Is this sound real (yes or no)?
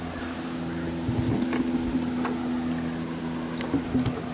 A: yes